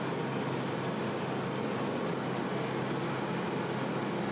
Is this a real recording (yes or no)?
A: yes